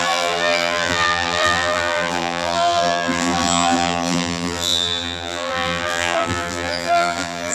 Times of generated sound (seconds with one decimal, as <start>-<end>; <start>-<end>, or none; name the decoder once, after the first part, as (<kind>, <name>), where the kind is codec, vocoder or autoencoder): 0.0-7.5 (vocoder, BigVGAN v2)